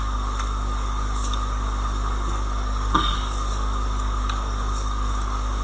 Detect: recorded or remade remade